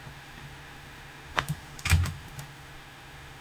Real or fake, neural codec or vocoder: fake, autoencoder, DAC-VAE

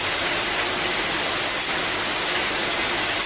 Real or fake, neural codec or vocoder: real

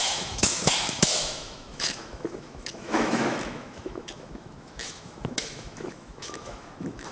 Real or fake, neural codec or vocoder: fake, autoencoder, DAC-VAE